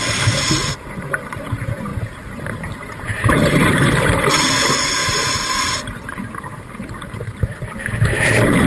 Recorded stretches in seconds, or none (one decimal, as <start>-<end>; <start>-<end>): 0.0-1.9; 4.4-5.0; 6.0-6.5; 7.4-8.7

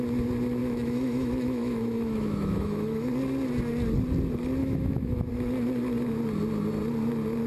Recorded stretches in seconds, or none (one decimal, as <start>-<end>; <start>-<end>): 0.0-0.6; 3.1-4.6; 5.3-7.5